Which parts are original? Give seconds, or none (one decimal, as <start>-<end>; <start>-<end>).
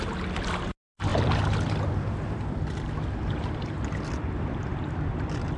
0.0-1.1; 2.6-5.6